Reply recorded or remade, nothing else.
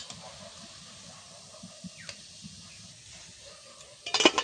recorded